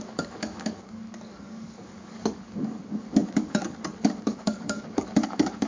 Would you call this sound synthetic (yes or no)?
yes